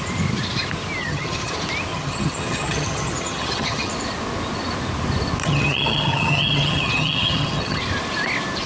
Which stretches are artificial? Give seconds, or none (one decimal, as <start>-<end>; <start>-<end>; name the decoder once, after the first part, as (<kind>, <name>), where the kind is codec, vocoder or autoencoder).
1.0-1.5 (vocoder, HiFi-GAN); 1.9-3.9; 5.4-7.8